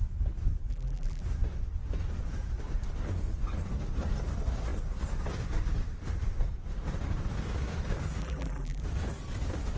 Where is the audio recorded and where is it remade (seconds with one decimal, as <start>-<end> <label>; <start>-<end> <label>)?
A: 0.0-0.7 recorded; 0.7-1.2 remade; 1.2-8.2 recorded; 8.2-8.8 remade; 8.8-9.8 recorded